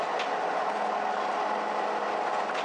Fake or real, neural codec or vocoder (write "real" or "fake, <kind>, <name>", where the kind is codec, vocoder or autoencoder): real